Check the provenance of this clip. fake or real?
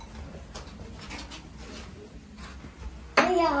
real